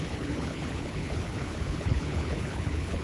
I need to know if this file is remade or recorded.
remade